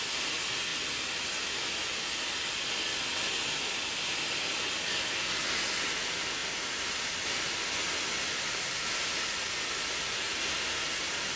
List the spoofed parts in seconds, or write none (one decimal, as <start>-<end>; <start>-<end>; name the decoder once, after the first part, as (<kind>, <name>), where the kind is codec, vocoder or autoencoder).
none